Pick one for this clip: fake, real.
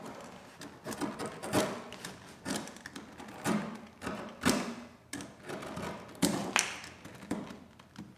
real